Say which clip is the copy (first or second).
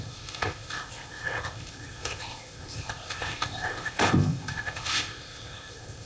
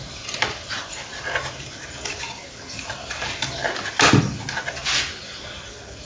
first